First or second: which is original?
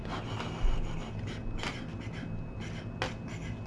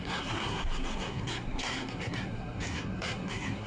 first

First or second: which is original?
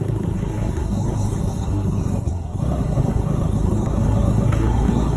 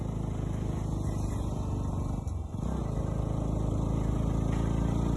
second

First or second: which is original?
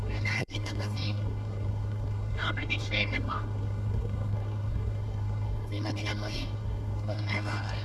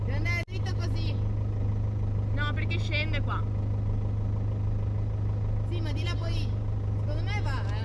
second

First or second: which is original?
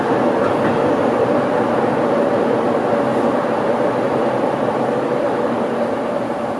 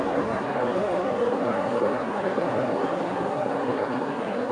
first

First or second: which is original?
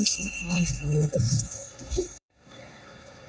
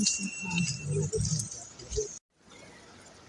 second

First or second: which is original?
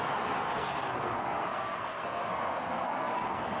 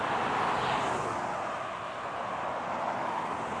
second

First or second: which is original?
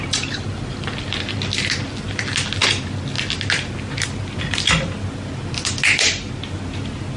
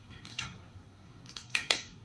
first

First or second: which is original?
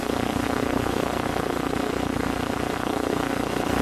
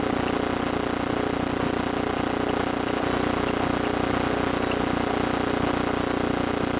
second